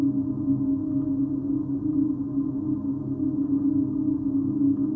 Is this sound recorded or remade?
recorded